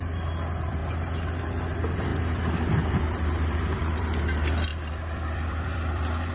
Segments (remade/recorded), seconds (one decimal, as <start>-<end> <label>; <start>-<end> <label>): 0.0-0.8 remade; 0.8-1.3 recorded; 1.3-6.3 remade